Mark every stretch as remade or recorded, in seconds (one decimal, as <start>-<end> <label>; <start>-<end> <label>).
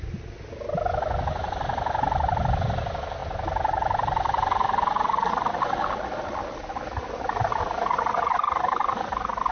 0.0-9.5 recorded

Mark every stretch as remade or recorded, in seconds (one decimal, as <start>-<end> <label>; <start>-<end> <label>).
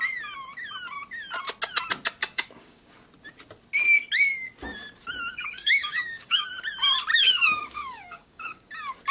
0.0-2.2 recorded; 2.2-2.9 remade; 2.9-5.3 recorded; 5.3-6.5 remade; 6.5-7.1 recorded; 7.1-8.7 remade; 8.7-9.1 recorded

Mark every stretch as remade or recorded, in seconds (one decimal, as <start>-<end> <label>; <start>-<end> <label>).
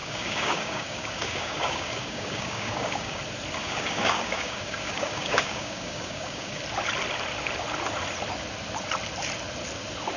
0.0-3.2 remade; 3.2-3.6 recorded; 3.6-6.6 remade; 6.6-10.2 recorded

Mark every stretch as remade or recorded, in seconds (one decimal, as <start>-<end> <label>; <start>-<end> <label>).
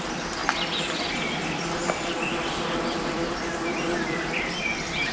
0.0-5.1 recorded